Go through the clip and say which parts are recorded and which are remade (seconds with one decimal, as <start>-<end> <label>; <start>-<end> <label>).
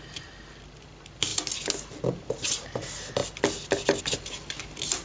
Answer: 0.0-5.0 recorded